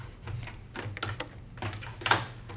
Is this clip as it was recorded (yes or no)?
yes